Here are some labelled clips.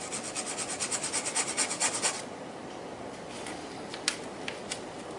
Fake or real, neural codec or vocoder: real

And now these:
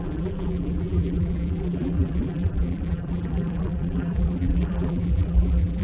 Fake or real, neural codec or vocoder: fake, vocoder, BigVGAN v2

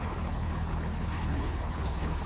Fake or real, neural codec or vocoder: fake, codec, HILCodec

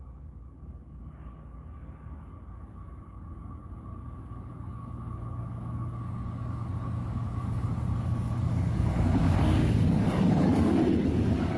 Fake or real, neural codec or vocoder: fake, codec, DAC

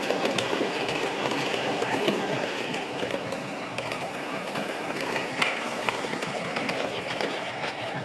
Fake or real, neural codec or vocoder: fake, codec, SNAC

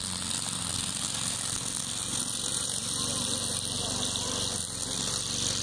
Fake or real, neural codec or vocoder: real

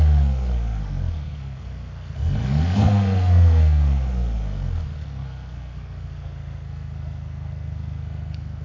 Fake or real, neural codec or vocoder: fake, codec, SNAC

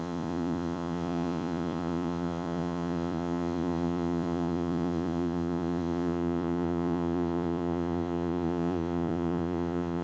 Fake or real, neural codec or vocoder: fake, vocoder, Vocos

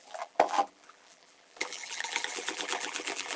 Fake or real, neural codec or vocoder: fake, vocoder, BigVGAN v2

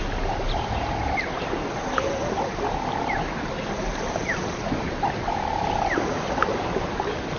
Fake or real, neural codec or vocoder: real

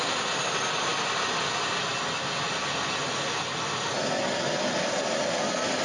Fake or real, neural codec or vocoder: real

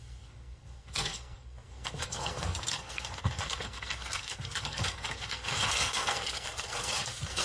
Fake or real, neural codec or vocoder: fake, codec, SNAC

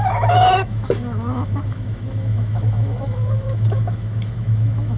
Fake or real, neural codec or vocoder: fake, autoencoder, DAC-VAE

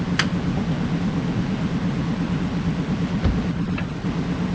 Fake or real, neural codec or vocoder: real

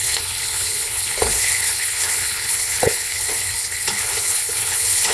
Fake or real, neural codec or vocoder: fake, codec, HILCodec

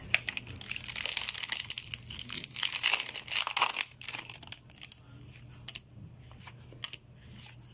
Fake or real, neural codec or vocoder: real